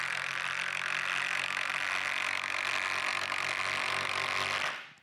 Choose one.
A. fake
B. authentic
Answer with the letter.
B